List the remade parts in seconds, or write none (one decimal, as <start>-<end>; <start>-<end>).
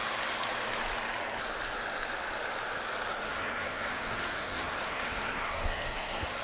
3.1-6.4